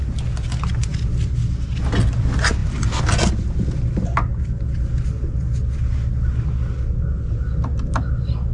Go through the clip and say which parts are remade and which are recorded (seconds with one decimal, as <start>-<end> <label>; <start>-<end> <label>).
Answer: 0.0-8.5 recorded